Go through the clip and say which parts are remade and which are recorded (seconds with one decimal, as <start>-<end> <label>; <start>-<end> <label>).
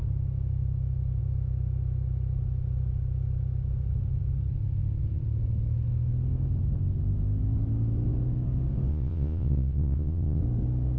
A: 0.0-8.9 recorded; 8.9-10.4 remade; 10.4-11.0 recorded